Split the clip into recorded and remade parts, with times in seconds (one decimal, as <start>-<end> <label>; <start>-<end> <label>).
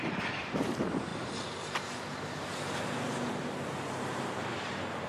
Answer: 0.0-5.1 remade